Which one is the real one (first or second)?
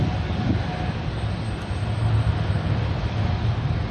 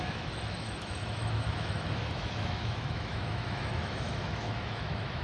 first